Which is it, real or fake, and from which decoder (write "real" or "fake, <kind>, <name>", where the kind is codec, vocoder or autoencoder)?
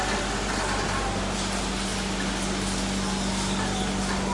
real